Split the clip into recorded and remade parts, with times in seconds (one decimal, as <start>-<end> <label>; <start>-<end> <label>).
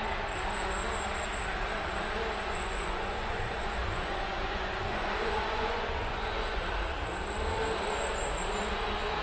0.0-2.4 recorded; 2.4-6.6 remade; 6.6-9.2 recorded